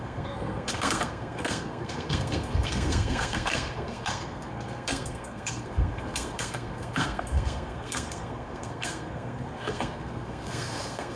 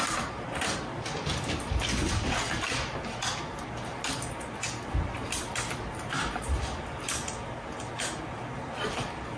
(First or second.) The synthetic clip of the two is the first